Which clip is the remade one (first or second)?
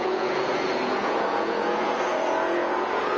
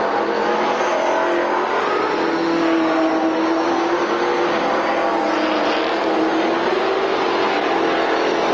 first